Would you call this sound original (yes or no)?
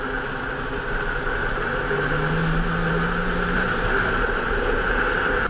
yes